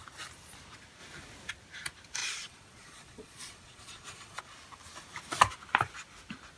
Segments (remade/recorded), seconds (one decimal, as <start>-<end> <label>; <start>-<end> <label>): 0.0-2.2 recorded; 2.2-4.4 remade; 4.4-6.6 recorded